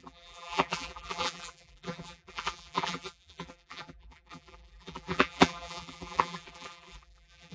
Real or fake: fake